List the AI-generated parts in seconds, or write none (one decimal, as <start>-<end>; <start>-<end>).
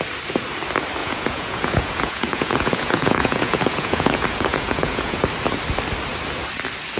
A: 1.0-5.2